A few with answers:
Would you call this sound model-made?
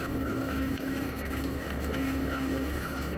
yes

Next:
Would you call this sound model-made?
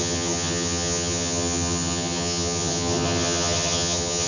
yes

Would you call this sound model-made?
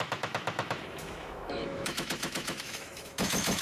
yes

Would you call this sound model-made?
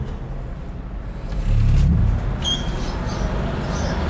no